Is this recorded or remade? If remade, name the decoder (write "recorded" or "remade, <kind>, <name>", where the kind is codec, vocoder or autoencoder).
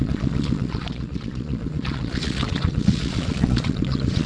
remade, vocoder, Vocos